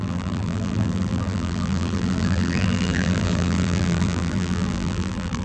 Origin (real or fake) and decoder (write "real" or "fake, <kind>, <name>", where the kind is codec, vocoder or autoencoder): fake, vocoder, BigVGAN v2